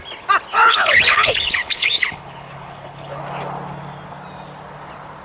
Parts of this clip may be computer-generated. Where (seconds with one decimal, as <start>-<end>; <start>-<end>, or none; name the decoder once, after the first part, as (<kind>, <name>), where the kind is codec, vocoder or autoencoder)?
0.5-3.2 (codec, HILCodec)